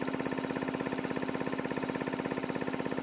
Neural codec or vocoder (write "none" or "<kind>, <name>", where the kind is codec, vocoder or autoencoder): vocoder, BigVGAN v2